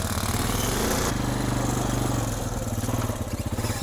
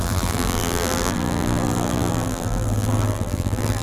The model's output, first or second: second